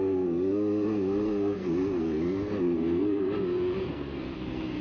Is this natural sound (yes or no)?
no